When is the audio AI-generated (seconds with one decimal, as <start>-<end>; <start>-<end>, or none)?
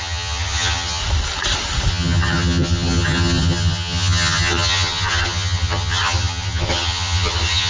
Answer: 0.0-1.0; 1.9-7.7